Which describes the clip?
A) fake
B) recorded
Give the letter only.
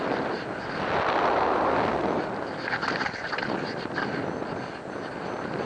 B